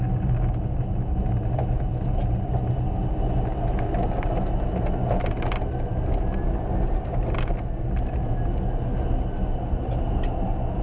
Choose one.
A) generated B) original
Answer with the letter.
B